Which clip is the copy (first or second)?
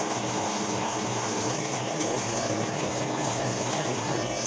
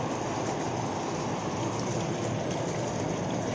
first